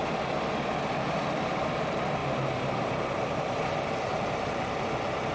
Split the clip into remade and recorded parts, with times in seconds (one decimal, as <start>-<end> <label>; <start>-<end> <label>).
0.0-2.2 recorded; 2.2-3.0 remade; 3.0-4.1 recorded; 4.1-4.8 remade; 4.8-5.3 recorded